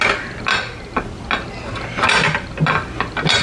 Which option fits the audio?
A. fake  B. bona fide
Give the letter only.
B